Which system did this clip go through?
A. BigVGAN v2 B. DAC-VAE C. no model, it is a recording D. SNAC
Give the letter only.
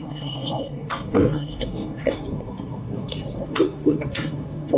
D